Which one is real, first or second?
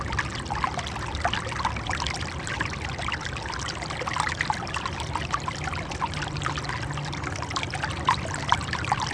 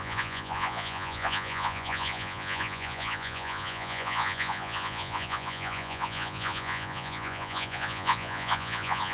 first